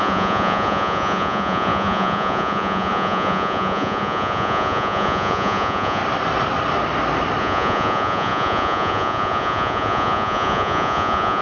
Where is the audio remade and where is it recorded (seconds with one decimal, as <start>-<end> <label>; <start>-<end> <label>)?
0.0-6.0 remade; 6.0-7.4 recorded; 7.4-11.4 remade